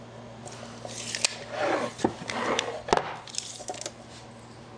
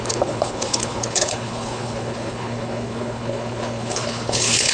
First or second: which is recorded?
first